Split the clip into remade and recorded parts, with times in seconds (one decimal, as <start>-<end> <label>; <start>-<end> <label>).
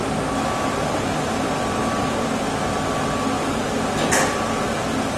0.0-5.2 recorded